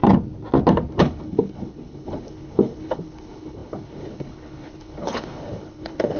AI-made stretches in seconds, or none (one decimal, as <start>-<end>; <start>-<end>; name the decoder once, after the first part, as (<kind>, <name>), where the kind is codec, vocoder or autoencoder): 1.0-6.2 (codec, HILCodec)

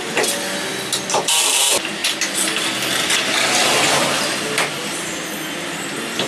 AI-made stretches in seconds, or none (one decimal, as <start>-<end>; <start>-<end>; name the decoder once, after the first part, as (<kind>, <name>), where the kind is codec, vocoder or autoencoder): none

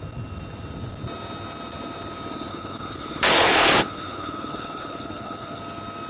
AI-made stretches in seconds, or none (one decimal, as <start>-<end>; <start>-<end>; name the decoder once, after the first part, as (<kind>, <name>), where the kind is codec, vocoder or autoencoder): 2.5-5.6 (codec, HILCodec)

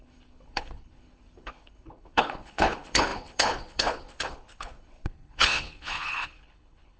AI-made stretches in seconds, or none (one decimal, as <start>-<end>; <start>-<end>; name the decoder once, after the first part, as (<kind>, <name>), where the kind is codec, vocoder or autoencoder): 0.0-7.0 (codec, HILCodec)

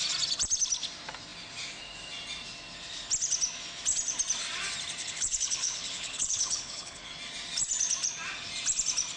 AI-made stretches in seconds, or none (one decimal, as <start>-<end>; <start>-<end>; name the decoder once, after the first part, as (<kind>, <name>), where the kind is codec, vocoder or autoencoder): 5.0-7.1 (codec, HILCodec)